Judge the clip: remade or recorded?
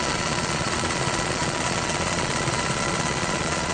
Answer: remade